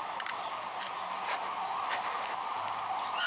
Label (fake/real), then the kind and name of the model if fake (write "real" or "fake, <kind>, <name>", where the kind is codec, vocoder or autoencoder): real